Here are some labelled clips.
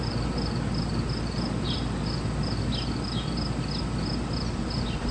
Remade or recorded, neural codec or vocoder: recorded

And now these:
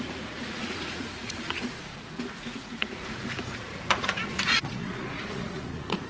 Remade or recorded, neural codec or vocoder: remade, vocoder, Vocos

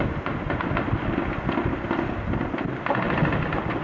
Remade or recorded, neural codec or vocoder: recorded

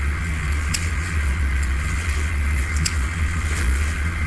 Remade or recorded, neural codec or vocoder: remade, vocoder, Vocos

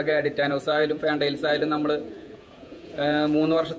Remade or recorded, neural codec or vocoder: remade, vocoder, Vocos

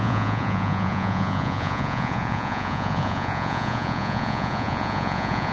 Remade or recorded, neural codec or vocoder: remade, vocoder, Vocos